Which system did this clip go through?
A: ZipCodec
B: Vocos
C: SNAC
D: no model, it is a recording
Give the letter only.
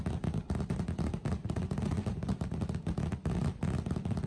D